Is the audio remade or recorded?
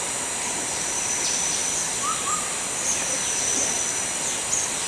recorded